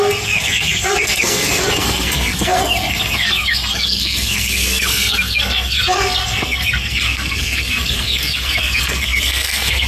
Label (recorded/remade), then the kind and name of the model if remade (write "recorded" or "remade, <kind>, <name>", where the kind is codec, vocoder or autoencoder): remade, codec, SNAC